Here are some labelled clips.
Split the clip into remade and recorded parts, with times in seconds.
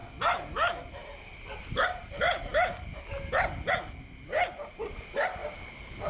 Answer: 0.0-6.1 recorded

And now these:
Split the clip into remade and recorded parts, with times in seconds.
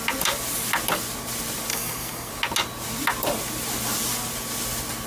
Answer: 0.0-1.7 recorded; 1.7-2.3 remade; 2.3-5.1 recorded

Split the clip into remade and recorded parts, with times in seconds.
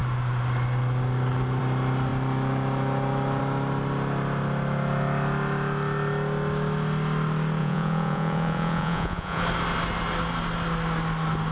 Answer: 0.0-7.6 recorded; 7.6-9.4 remade; 9.4-11.5 recorded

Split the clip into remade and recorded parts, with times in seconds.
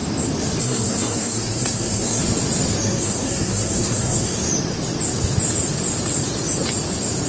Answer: 0.0-0.6 recorded; 0.6-2.2 remade; 2.2-2.8 recorded; 2.8-4.5 remade; 4.5-7.3 recorded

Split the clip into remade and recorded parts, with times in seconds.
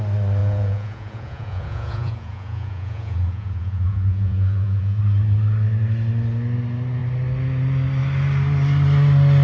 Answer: 0.0-0.4 recorded; 0.4-5.0 remade; 5.0-9.4 recorded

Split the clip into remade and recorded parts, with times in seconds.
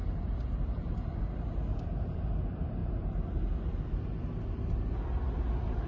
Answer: 0.0-1.8 recorded; 1.8-2.8 remade; 2.8-5.4 recorded; 5.4-5.9 remade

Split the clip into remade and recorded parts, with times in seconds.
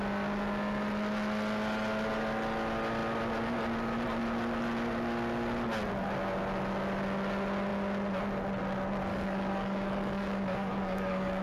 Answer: 0.0-9.1 recorded; 9.1-11.4 remade